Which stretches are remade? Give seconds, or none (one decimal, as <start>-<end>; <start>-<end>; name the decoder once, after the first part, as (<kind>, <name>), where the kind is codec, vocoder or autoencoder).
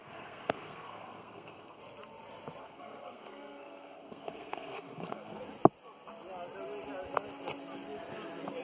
0.0-1.8 (codec, SNAC); 2.6-5.4